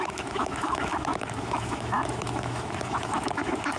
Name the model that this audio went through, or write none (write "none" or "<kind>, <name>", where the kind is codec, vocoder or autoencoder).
autoencoder, DAC-VAE